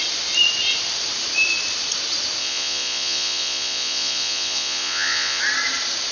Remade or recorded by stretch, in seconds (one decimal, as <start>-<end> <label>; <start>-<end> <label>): 0.0-2.4 recorded; 2.4-5.4 remade; 5.4-6.1 recorded